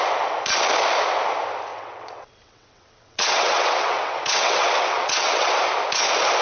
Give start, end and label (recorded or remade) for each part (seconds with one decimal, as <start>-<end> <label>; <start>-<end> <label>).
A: 0.0-1.7 recorded; 1.7-5.5 remade; 5.5-6.4 recorded